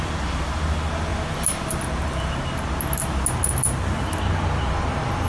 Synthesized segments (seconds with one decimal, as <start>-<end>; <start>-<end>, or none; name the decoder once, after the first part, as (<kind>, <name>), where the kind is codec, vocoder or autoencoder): none